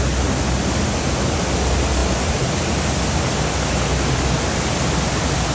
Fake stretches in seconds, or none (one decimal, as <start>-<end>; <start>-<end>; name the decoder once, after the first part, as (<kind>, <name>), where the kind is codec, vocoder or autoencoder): none